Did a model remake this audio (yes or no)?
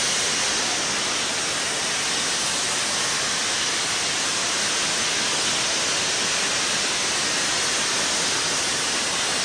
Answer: no